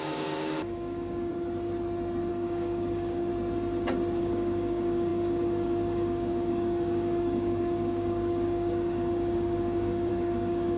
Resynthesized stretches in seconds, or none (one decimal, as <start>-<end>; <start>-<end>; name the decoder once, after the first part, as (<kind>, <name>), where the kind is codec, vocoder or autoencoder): 0.0-1.3 (codec, DAC); 2.3-3.3; 4.2-10.8